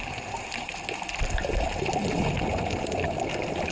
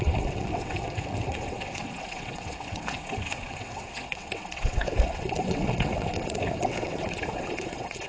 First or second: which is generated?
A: second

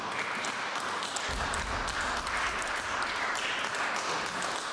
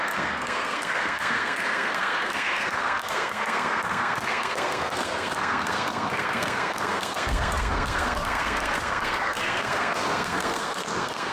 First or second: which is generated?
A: second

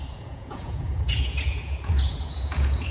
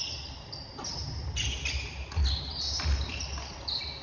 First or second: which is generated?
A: first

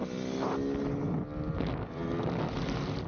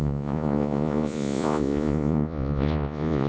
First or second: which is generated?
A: second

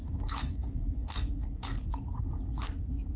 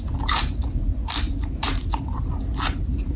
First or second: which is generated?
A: first